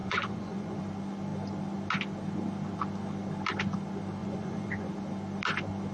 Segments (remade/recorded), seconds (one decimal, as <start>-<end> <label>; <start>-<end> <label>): 0.0-0.8 remade; 0.8-4.2 recorded; 4.2-4.9 remade; 4.9-5.9 recorded